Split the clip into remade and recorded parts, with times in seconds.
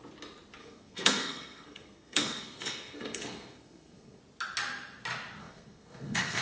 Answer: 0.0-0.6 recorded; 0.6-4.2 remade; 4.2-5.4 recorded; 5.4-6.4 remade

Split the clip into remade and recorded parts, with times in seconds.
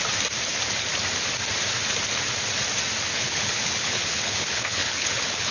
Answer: 0.0-3.1 recorded; 3.1-5.5 remade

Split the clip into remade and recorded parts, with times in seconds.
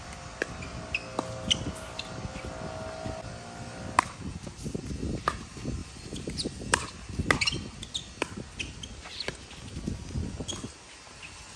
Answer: 0.0-5.8 recorded; 5.8-6.9 remade; 6.9-11.6 recorded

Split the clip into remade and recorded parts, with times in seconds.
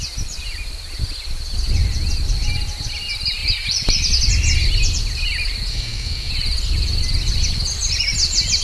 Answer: 0.0-5.7 recorded; 5.7-6.3 remade; 6.3-8.6 recorded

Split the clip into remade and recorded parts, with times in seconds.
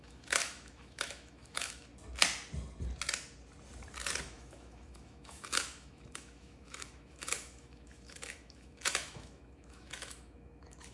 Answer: 0.0-1.9 remade; 1.9-4.2 recorded; 4.2-10.9 remade